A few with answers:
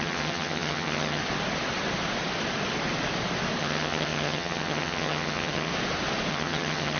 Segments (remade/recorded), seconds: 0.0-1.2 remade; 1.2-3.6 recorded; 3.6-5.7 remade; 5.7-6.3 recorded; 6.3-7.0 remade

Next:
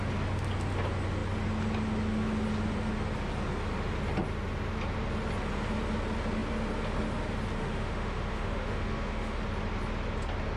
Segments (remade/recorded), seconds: 0.0-7.6 recorded; 7.6-9.4 remade; 9.4-10.6 recorded

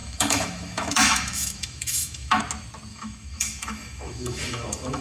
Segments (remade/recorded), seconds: 0.0-2.4 remade; 2.4-2.9 recorded; 2.9-5.0 remade

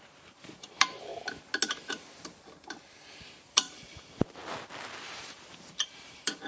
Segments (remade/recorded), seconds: 0.0-1.1 remade; 1.1-3.4 recorded; 3.4-4.4 remade; 4.4-5.0 recorded; 5.0-6.5 remade

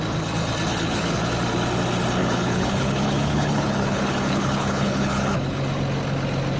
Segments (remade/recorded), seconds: 0.0-0.7 recorded; 0.7-1.2 remade; 1.2-2.2 recorded; 2.2-5.6 remade; 5.6-6.6 recorded

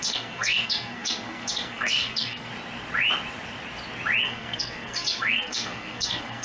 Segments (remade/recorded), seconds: 0.0-2.5 remade; 2.5-4.2 recorded; 4.2-6.4 remade

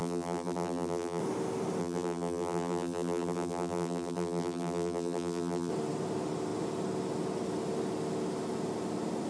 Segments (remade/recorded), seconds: 0.0-1.2 remade; 1.2-1.8 recorded; 1.8-5.7 remade; 5.7-9.3 recorded

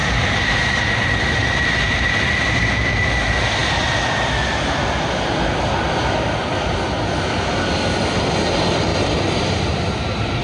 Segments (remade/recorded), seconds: 0.0-0.8 remade; 0.8-8.9 recorded; 8.9-10.4 remade